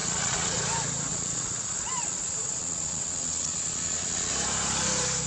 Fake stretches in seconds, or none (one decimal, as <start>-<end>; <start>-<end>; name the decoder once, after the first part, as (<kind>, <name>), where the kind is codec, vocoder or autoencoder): 0.0-0.6 (vocoder, Vocos); 1.1-4.3